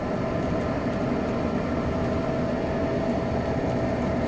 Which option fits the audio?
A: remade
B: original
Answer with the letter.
B